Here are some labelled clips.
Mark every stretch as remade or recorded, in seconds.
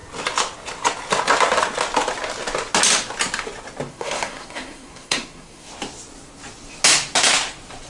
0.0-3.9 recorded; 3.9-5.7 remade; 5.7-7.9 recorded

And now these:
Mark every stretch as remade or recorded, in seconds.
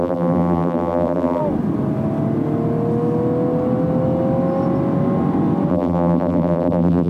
0.0-1.4 remade; 1.4-5.7 recorded; 5.7-7.1 remade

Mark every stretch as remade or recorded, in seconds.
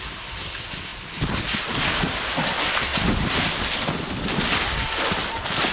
0.0-0.9 recorded; 0.9-2.5 remade; 2.5-2.9 recorded; 2.9-4.4 remade; 4.4-5.7 recorded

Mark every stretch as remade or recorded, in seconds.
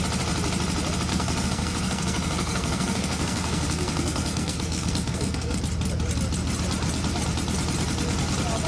0.0-1.1 recorded; 1.1-5.6 remade; 5.6-8.7 recorded